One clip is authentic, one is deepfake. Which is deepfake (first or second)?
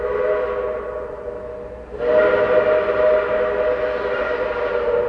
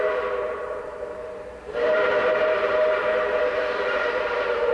second